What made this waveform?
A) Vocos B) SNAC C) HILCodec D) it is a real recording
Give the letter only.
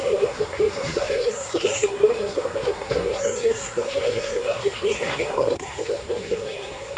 B